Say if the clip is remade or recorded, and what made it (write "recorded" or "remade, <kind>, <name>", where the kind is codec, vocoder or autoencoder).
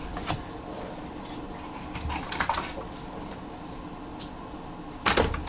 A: recorded